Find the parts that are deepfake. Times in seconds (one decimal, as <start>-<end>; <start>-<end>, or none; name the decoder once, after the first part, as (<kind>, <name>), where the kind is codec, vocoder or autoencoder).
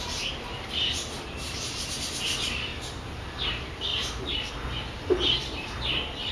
0.5-1.9 (vocoder, BigVGAN v2); 2.7-3.5; 3.9-4.5